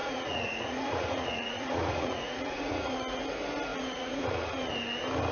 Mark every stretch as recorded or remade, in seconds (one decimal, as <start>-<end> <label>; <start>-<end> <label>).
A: 0.0-3.2 remade; 3.2-3.7 recorded; 3.7-4.7 remade; 4.7-5.3 recorded